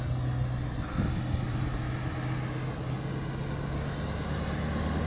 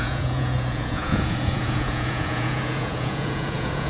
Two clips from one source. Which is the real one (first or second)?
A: first